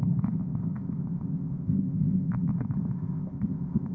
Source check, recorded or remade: remade